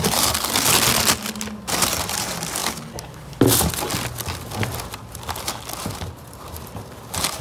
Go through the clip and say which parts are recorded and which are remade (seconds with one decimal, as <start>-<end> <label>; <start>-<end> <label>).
0.0-7.4 recorded